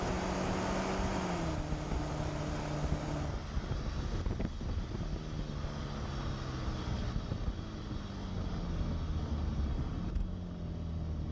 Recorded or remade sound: recorded